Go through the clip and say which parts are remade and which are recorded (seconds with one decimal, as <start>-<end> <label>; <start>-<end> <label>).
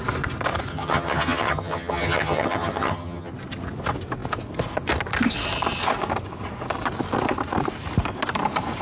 0.0-0.7 recorded; 0.7-3.3 remade; 3.3-8.8 recorded